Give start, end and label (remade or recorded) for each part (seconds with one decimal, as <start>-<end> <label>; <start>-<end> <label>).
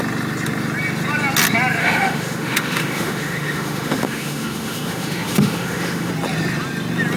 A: 0.0-1.8 recorded; 1.8-6.1 remade; 6.1-7.2 recorded